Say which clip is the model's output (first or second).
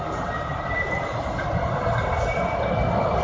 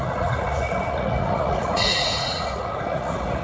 second